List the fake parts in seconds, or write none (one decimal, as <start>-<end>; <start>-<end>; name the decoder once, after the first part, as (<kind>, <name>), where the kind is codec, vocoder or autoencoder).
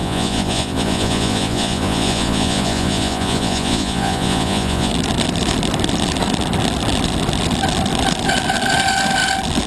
0.0-4.9 (vocoder, Vocos)